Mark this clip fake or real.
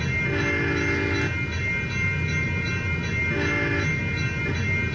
real